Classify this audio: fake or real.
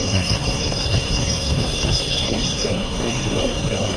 fake